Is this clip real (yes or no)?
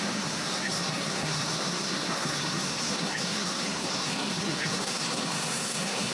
no